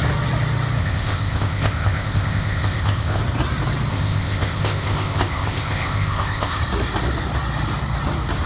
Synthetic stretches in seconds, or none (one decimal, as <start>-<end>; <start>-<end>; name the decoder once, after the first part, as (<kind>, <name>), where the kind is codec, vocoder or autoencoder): 0.8-3.2 (codec, ZipCodec); 3.9-6.6